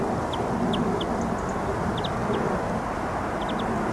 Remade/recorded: recorded